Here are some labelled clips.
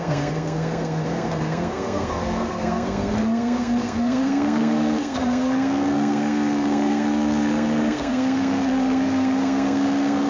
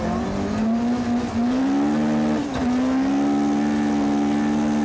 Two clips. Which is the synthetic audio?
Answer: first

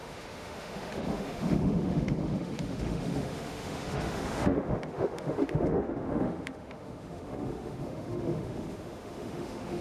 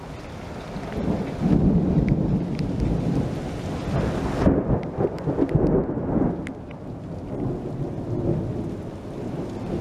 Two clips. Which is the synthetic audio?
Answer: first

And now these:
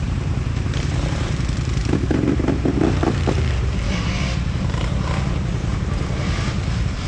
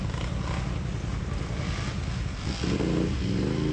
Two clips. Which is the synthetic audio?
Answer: first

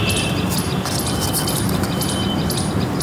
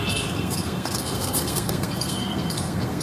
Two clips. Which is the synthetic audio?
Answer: second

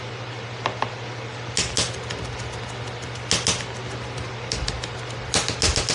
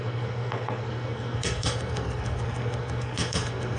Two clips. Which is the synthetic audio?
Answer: second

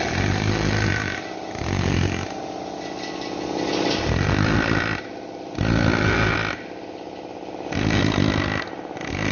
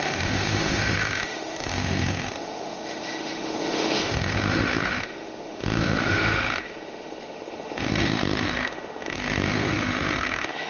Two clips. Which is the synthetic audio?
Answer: second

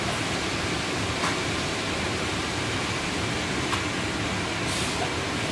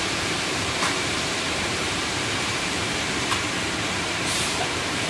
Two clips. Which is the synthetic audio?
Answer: second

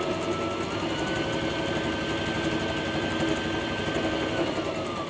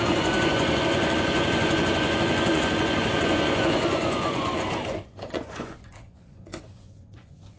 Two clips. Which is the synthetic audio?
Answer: second